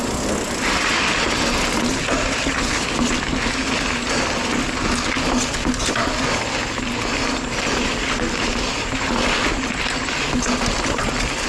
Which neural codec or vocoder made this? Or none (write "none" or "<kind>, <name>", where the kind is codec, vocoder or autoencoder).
none